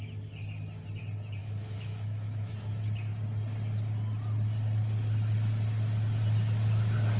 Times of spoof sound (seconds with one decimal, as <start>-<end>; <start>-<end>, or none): 1.4-2.5